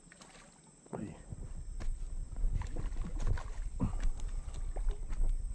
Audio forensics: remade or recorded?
recorded